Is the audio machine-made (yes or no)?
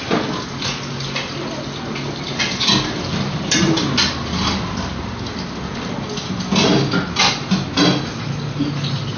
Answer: no